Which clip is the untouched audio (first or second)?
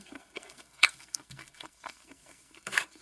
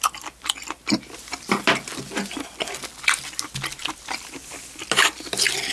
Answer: second